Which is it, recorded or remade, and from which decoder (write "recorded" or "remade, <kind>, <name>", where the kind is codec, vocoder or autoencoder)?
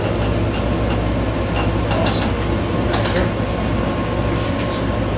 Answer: recorded